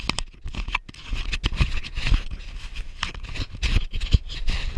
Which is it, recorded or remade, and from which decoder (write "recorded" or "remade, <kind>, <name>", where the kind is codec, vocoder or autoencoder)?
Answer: recorded